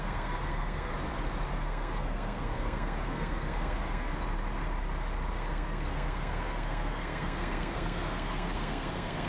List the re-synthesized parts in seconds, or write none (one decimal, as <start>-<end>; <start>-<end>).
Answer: 0.0-0.9; 1.5-4.1; 5.3-9.3